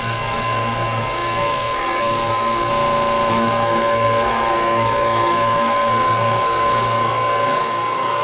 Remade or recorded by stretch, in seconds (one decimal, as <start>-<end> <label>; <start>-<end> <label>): 0.0-2.7 remade; 2.7-3.3 recorded; 3.3-8.2 remade